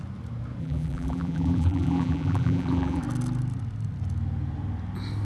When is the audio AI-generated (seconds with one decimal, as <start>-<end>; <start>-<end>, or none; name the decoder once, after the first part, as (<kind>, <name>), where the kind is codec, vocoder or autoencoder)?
0.6-3.0 (vocoder, BigVGAN v2)